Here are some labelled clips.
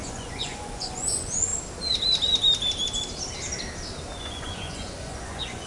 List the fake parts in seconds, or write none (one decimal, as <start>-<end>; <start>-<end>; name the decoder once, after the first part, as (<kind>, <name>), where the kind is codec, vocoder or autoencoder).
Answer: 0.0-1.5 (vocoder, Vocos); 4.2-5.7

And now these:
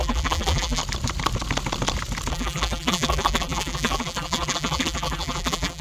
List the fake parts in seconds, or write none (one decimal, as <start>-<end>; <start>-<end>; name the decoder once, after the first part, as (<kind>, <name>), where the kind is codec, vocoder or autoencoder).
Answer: 0.0-0.8 (vocoder, BigVGAN v2); 2.3-5.8

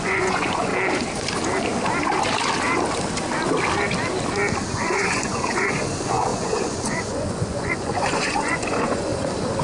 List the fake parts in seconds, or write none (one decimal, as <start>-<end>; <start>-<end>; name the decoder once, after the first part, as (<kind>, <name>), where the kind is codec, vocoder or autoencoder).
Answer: 0.0-0.7 (vocoder, Vocos); 4.7-9.1

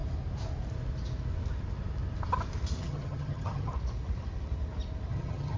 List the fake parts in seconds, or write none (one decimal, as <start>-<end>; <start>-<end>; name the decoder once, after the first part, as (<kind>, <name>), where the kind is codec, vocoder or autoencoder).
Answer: 2.8-3.7 (vocoder, HiFi-GAN); 5.1-5.6